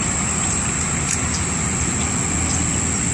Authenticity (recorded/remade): recorded